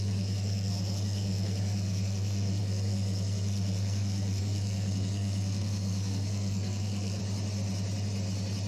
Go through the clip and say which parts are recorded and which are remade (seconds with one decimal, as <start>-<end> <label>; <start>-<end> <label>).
0.0-7.2 remade; 7.2-8.7 recorded